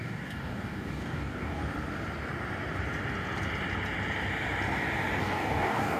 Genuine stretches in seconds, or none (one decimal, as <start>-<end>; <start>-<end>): 1.6-5.2